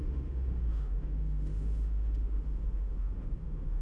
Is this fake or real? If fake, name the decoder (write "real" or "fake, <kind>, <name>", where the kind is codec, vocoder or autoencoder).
fake, autoencoder, DAC-VAE